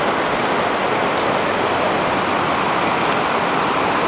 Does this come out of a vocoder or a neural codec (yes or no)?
no